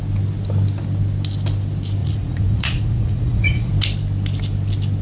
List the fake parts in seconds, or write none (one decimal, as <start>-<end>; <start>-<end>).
2.0-3.7